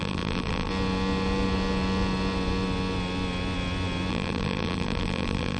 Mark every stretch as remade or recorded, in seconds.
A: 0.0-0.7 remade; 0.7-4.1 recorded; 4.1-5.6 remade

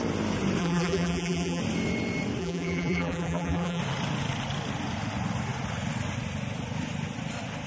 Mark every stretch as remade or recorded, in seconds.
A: 0.0-0.6 recorded; 0.6-1.6 remade; 1.6-2.4 recorded; 2.4-3.8 remade; 3.8-7.7 recorded

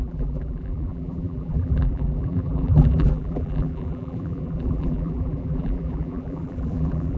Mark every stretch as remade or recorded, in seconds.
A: 0.0-7.2 remade

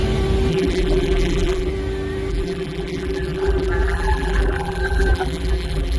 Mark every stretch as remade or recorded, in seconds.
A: 0.0-0.5 recorded; 0.5-1.7 remade; 1.7-2.3 recorded; 2.3-6.0 remade

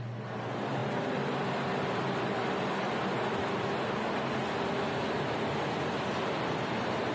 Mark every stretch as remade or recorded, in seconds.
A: 0.0-7.1 recorded

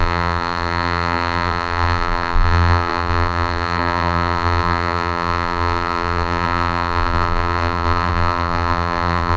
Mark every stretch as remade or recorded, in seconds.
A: 0.0-9.4 remade

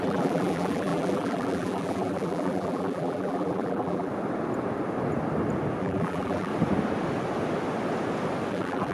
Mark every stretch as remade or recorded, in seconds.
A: 0.0-4.1 remade; 4.1-5.8 recorded; 5.8-6.5 remade; 6.5-8.5 recorded; 8.5-8.9 remade